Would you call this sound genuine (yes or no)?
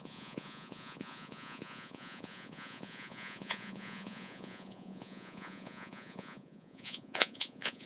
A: no